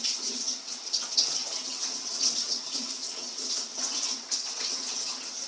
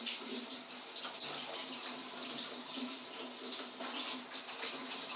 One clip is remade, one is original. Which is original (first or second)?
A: second